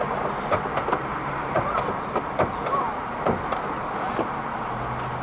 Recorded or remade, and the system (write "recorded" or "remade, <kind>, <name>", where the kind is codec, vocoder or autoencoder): recorded